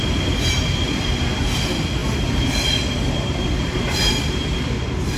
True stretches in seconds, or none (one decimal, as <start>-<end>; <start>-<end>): 0.0-5.2